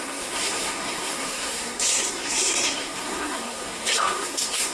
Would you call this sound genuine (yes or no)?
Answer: no